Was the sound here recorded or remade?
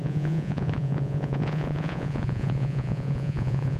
remade